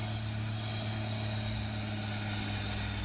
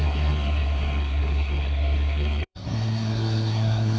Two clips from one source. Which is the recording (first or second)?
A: first